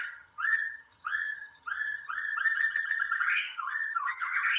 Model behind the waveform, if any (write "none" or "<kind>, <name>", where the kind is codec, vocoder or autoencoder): vocoder, HiFi-GAN